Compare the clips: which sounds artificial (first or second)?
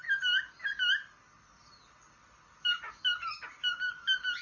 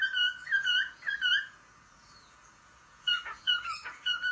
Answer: second